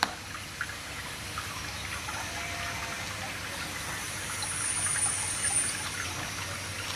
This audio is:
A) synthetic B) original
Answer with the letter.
B